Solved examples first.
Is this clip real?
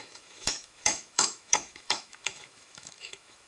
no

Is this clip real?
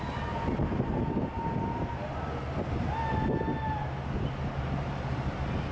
yes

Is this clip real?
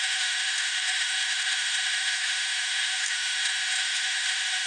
no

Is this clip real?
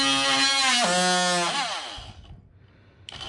yes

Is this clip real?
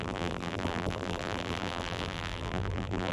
no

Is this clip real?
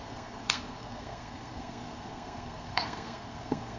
no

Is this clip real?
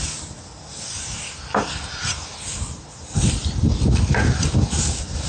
yes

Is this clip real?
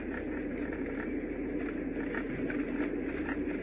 yes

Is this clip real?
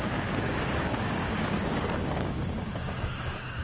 no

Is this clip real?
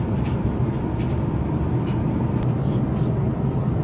yes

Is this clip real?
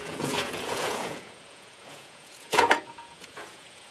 no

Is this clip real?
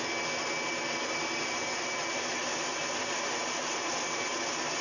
yes